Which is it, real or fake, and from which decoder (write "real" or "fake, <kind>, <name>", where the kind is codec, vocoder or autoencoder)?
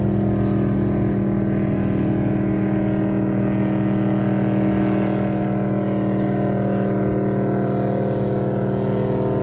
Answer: real